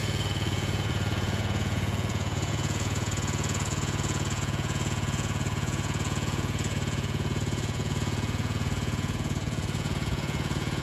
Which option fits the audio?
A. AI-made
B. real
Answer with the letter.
A